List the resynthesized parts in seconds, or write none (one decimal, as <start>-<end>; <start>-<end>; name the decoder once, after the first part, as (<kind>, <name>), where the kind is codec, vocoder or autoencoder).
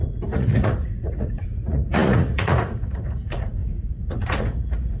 0.0-5.0 (vocoder, Vocos)